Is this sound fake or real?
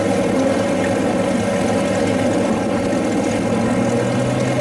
real